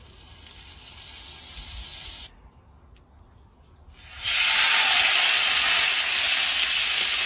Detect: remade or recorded recorded